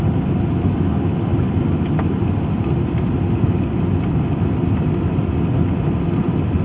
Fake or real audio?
real